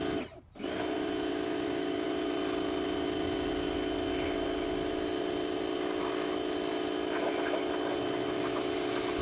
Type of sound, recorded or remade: recorded